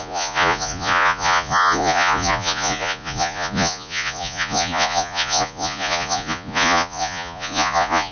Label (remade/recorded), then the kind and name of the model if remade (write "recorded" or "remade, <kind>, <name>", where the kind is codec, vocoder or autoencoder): remade, vocoder, Vocos